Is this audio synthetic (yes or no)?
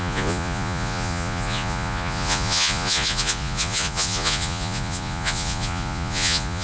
yes